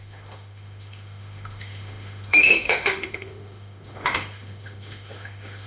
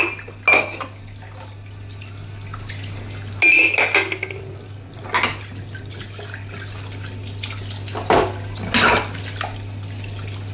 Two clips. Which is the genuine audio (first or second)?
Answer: second